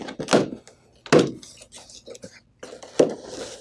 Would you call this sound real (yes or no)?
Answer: yes